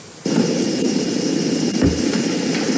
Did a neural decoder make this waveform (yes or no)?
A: yes